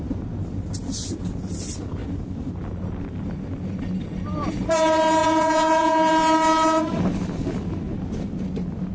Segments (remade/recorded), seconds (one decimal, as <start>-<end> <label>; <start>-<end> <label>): 0.0-5.2 recorded; 5.2-6.1 remade; 6.1-8.9 recorded